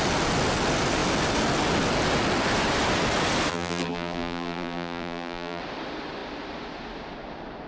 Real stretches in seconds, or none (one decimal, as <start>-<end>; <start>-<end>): 0.0-3.5; 5.6-7.7